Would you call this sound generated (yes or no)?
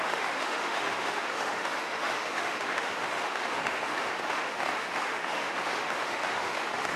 yes